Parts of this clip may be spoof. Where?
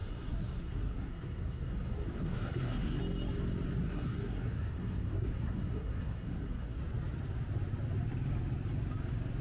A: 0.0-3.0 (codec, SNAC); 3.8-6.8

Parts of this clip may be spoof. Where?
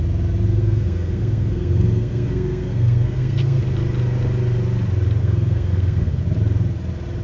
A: 0.5-3.6 (codec, SNAC); 5.2-6.2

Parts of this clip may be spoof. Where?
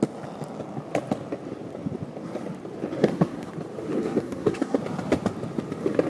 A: 3.0-3.5 (codec, SNAC); 4.0-4.8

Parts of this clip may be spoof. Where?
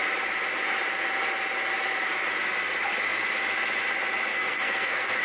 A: 4.3-5.2 (codec, SNAC)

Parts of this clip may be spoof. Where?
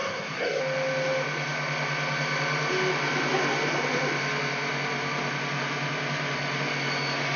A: 0.0-0.6 (codec, SNAC)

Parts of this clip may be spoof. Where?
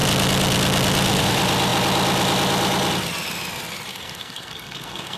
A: 3.9-5.2 (codec, SNAC)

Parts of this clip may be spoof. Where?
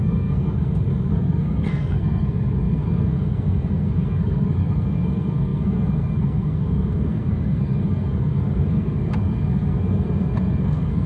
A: 0.0-11.1 (codec, SNAC)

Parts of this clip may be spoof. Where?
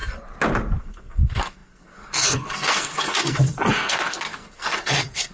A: 0.8-5.3 (codec, SNAC)